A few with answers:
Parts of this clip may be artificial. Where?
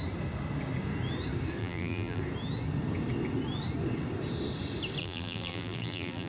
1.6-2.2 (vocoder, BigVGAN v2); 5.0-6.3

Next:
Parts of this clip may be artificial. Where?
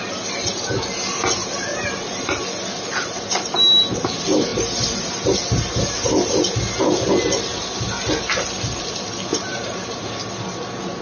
1.7-2.3 (vocoder, BigVGAN v2); 9.3-10.2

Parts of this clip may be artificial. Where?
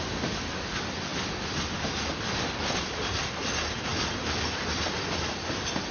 none